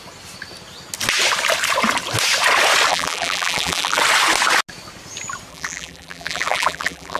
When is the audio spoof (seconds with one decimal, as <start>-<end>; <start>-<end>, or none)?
2.9-4.0; 5.5-7.2